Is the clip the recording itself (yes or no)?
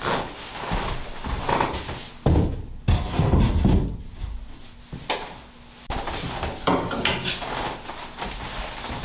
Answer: yes